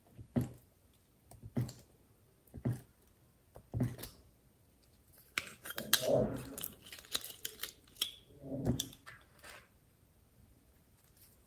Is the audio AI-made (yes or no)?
no